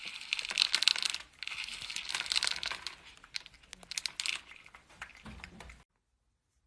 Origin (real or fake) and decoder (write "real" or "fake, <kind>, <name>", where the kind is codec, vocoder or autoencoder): real